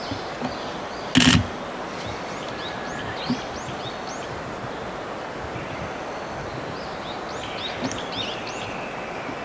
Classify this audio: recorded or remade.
recorded